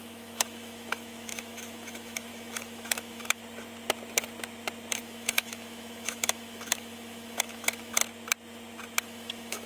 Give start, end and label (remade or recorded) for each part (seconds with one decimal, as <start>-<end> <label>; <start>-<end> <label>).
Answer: 0.0-3.4 remade; 3.4-5.0 recorded; 5.0-8.0 remade; 8.0-9.0 recorded; 9.0-9.7 remade